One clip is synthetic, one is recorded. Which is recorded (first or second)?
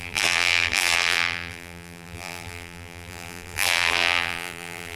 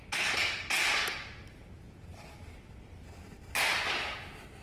second